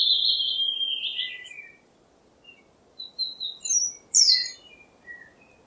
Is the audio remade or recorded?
recorded